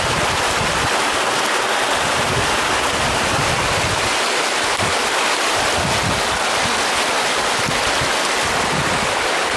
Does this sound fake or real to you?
real